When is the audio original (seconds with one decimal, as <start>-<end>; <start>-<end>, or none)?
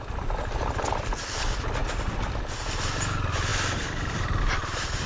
0.0-3.5; 4.4-5.1